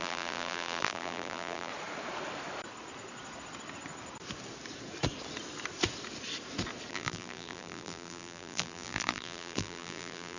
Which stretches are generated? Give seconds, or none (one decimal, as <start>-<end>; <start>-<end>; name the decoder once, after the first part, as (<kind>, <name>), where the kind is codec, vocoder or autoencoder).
0.0-1.7 (vocoder, BigVGAN v2); 6.9-10.4